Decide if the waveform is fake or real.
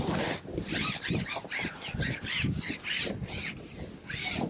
real